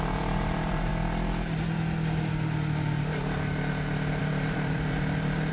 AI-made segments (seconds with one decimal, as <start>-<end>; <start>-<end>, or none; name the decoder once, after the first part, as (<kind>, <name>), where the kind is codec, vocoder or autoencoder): 0.0-0.9 (vocoder, BigVGAN v2); 4.2-5.5